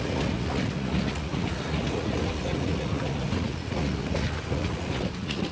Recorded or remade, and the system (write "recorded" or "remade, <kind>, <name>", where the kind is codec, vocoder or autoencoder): remade, vocoder, Vocos